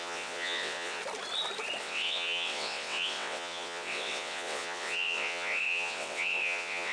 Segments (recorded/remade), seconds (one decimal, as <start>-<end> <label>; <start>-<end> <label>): 0.0-1.0 remade; 1.0-1.8 recorded; 1.8-6.9 remade